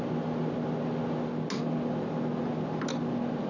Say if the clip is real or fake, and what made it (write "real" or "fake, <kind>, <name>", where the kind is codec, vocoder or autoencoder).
real